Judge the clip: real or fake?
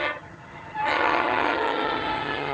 fake